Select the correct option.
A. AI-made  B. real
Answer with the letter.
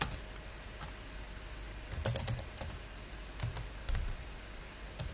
B